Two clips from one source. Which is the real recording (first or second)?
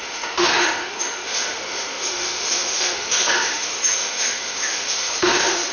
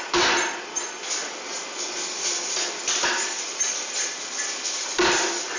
second